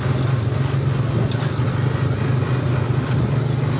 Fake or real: real